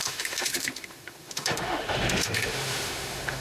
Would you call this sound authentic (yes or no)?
no